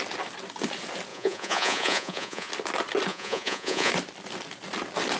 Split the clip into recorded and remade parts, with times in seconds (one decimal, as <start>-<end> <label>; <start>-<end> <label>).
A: 0.0-1.1 recorded; 1.1-2.5 remade; 2.5-3.1 recorded; 3.1-3.9 remade; 3.9-5.2 recorded